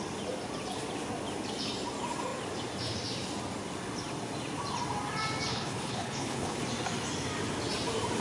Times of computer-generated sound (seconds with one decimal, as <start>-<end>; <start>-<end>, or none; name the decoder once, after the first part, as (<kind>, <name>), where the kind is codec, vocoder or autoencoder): 5.5-6.6 (codec, HILCodec)

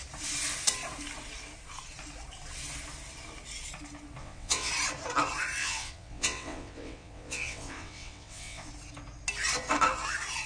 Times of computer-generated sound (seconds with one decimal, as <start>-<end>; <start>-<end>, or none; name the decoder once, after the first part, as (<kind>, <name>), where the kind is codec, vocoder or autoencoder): 4.2-4.7 (vocoder, WaveNeXt); 5.6-8.7